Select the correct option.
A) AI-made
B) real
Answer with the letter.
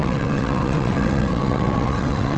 A